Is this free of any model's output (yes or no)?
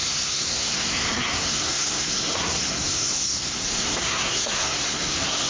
no